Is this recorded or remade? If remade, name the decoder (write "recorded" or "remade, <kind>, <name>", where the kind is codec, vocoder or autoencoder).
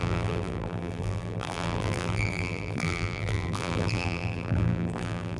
remade, vocoder, BigVGAN v2